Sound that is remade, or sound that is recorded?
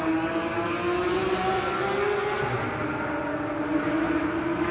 recorded